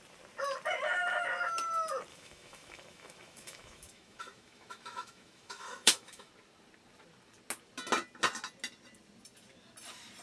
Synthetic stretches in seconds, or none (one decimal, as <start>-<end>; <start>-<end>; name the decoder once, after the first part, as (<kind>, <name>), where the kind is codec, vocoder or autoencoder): 2.1-6.3 (autoencoder, DAC-VAE)